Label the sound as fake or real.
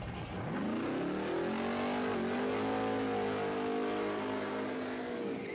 real